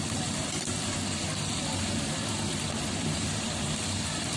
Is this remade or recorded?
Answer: remade